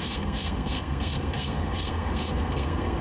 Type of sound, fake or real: fake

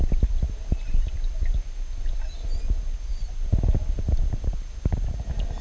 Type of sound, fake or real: real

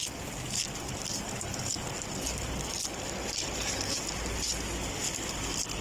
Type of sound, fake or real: real